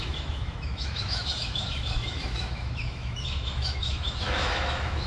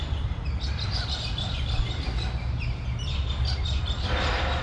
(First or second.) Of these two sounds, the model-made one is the first